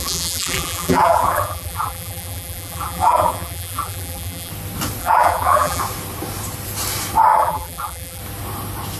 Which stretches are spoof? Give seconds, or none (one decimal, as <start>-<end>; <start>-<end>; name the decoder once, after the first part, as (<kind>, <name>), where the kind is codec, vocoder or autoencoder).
0.0-4.5 (vocoder, BigVGAN v2); 5.0-5.8; 7.3-8.2